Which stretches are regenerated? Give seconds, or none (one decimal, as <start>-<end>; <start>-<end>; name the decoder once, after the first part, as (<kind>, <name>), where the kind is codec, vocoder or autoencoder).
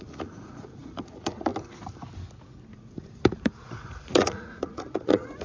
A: 0.0-1.5 (vocoder, Vocos); 2.7-5.4